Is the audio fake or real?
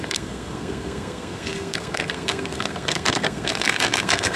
fake